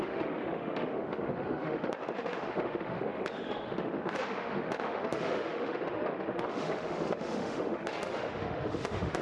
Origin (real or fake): fake